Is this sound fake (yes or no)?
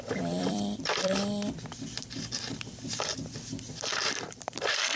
yes